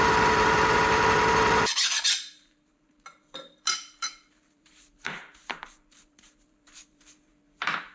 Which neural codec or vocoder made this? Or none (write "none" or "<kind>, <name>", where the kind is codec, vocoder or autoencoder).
vocoder, BigVGAN v2